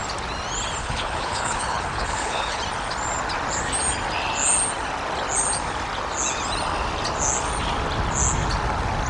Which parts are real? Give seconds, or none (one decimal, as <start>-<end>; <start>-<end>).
0.0-0.8; 2.6-9.1

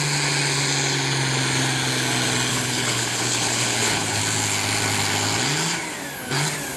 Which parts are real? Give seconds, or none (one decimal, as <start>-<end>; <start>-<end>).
0.0-2.5; 4.2-6.8